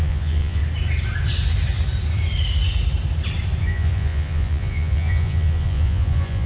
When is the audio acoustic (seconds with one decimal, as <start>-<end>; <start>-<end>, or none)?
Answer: 0.6-3.6